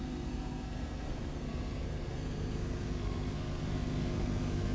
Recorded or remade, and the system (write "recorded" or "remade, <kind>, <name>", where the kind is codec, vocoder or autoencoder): remade, codec, SNAC